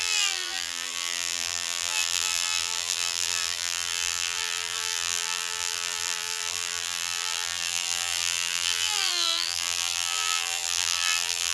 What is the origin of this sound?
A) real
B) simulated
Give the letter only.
B